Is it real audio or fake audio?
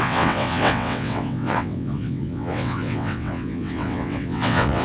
fake